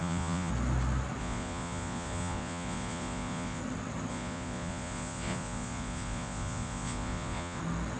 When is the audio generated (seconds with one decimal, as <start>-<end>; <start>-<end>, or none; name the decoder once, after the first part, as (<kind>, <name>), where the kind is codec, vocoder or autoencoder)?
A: 0.0-0.5 (vocoder, Vocos); 1.2-3.6; 4.1-7.6